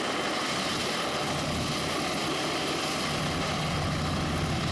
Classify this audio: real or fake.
real